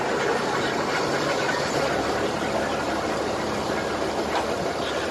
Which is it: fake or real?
fake